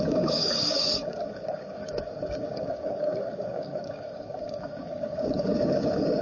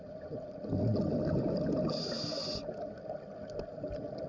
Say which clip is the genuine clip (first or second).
second